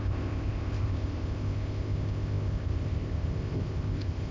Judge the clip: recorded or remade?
remade